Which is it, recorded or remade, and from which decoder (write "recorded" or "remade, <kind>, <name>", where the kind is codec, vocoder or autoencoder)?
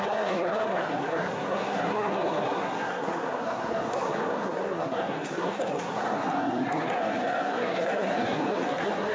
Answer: remade, codec, SNAC